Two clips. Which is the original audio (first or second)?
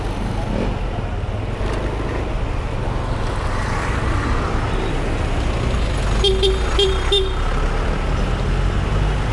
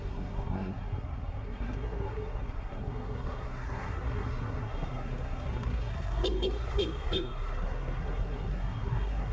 first